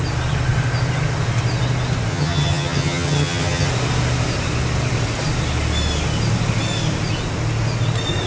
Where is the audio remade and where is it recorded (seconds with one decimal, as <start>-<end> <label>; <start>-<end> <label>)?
0.0-2.1 recorded; 2.1-3.7 remade; 3.7-8.3 recorded